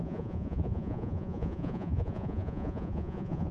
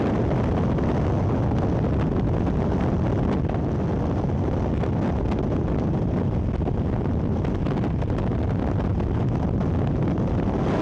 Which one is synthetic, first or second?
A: first